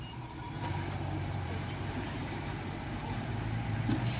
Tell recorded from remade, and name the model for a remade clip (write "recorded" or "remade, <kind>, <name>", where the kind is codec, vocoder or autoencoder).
remade, vocoder, BigVGAN v2